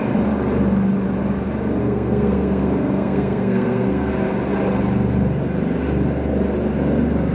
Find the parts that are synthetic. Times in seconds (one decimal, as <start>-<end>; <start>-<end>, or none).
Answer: 1.8-4.1